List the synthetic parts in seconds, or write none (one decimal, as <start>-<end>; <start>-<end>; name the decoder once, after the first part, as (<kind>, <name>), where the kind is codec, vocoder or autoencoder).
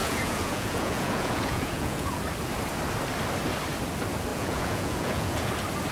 0.0-2.2 (vocoder, Vocos); 4.3-5.5